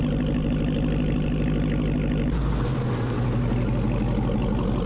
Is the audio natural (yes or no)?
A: yes